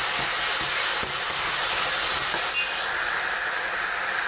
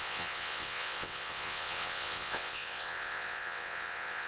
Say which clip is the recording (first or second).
first